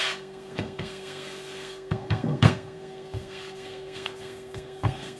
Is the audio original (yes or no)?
no